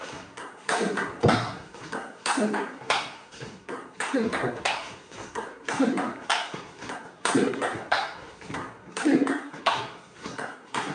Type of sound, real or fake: fake